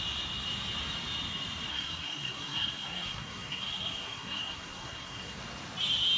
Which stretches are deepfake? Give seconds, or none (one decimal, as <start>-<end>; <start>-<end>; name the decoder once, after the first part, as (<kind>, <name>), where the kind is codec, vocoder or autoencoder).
1.7-5.4 (codec, SNAC)